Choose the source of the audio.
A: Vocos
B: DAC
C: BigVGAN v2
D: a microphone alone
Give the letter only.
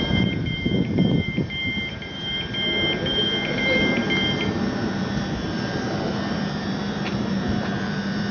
C